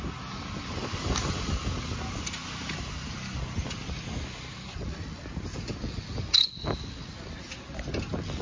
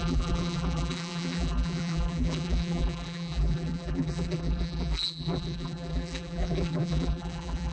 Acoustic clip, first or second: first